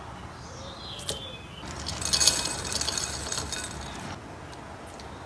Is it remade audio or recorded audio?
recorded